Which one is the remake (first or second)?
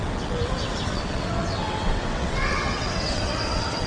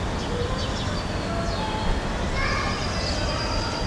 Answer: first